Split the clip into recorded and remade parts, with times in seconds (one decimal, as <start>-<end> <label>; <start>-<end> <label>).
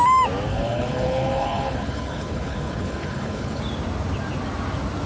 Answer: 0.0-0.5 recorded; 0.5-3.6 remade; 3.6-5.1 recorded